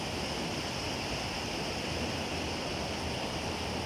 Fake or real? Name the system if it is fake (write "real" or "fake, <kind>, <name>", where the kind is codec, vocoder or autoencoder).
real